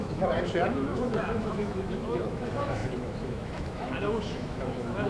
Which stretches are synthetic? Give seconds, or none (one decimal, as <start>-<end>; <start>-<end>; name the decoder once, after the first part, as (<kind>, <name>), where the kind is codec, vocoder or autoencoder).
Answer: 0.0-5.1 (autoencoder, DAC-VAE)